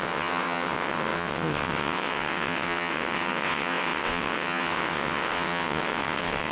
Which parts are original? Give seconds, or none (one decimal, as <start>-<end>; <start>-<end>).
none